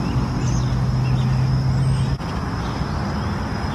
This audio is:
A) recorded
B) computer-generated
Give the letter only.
A